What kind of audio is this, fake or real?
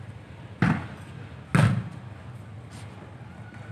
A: real